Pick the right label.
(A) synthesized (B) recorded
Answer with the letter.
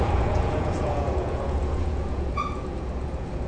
A